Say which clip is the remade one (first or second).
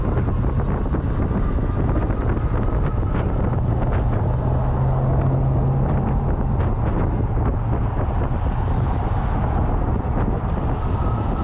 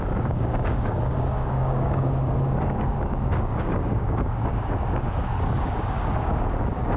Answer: second